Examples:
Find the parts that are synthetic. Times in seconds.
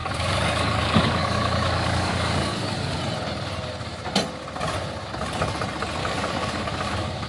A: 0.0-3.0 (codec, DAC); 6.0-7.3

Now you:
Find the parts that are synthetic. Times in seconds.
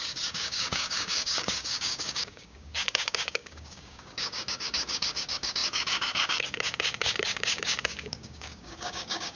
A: 0.0-9.4 (codec, DAC)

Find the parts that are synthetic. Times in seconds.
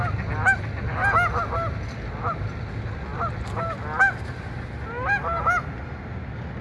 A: none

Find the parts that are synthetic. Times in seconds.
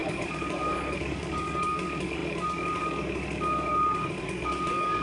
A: 0.0-5.0 (codec, DAC)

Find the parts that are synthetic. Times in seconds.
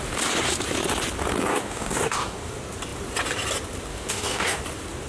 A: 1.5-2.5 (codec, DAC); 3.9-4.6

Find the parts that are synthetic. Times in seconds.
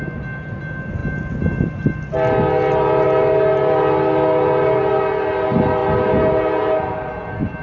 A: none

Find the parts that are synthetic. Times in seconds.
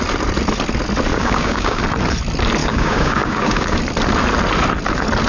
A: 1.1-1.8 (codec, DAC); 2.6-3.8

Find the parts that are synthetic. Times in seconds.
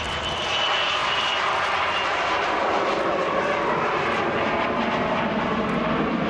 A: none